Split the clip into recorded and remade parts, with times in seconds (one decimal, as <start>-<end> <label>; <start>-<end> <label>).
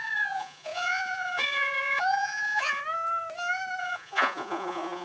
0.0-2.8 remade; 2.8-3.8 recorded; 3.8-5.0 remade